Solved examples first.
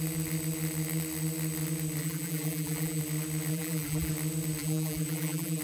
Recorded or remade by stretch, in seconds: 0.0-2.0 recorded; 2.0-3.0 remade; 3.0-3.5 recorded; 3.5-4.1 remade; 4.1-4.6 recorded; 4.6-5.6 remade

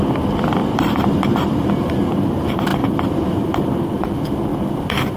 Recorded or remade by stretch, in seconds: 0.0-0.6 recorded; 0.6-1.6 remade; 1.6-5.2 recorded

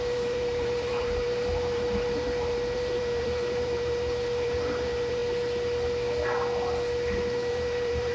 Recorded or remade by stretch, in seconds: 0.0-5.2 remade; 5.2-7.5 recorded; 7.5-8.1 remade

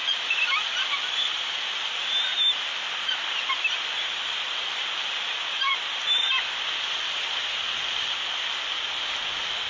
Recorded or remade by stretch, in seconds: 0.0-0.7 recorded; 0.7-2.3 remade; 2.3-3.3 recorded; 3.3-9.7 remade

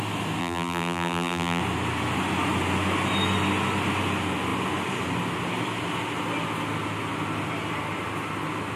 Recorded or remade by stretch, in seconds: 0.0-0.4 recorded; 0.4-1.6 remade; 1.6-8.8 recorded

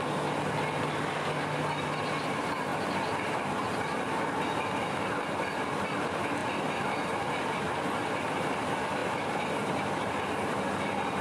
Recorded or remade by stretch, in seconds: 0.0-11.2 recorded